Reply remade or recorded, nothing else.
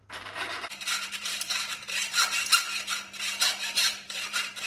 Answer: remade